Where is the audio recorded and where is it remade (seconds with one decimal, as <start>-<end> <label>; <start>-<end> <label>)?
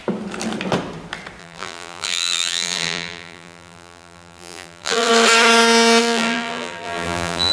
0.0-1.4 recorded; 1.4-5.1 remade; 5.1-6.0 recorded; 6.0-7.5 remade